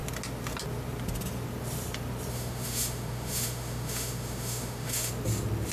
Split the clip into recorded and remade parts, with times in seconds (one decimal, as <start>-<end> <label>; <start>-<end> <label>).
0.0-2.3 recorded; 2.3-5.1 remade; 5.1-5.7 recorded